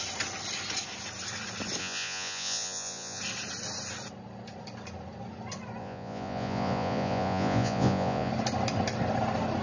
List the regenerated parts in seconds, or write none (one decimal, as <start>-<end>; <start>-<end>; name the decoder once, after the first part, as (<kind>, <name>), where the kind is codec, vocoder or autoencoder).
1.8-3.2 (vocoder, Vocos); 5.8-8.3